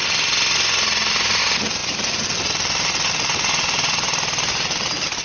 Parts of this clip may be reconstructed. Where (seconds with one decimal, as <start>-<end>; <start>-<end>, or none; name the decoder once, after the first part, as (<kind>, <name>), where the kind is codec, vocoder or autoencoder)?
none